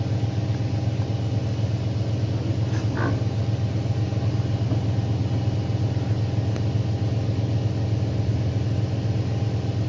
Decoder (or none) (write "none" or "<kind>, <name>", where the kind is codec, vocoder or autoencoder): none